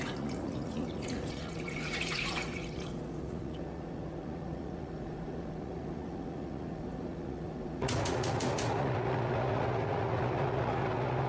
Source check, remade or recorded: remade